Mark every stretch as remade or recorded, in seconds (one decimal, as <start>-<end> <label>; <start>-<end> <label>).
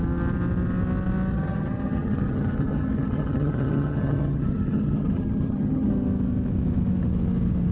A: 0.0-1.3 recorded; 1.3-5.9 remade; 5.9-7.7 recorded